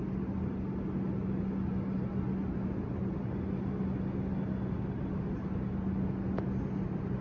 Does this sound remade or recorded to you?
recorded